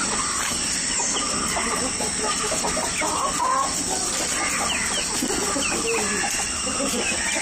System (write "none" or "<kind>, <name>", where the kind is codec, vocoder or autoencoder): none